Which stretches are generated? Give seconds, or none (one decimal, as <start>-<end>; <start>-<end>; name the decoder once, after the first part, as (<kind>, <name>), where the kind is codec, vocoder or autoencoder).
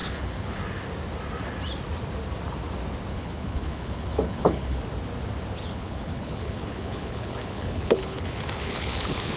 0.0-0.6 (codec, HILCodec); 3.1-4.8; 5.6-9.4